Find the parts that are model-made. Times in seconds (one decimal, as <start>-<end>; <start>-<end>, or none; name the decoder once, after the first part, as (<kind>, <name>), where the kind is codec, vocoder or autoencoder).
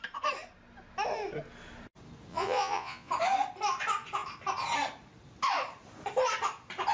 2.3-3.1 (vocoder, Vocos)